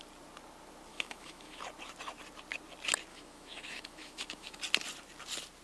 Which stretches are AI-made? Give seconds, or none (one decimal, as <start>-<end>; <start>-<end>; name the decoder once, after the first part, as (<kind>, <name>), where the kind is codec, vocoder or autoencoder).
0.9-1.6 (autoencoder, DAC-VAE); 3.1-4.6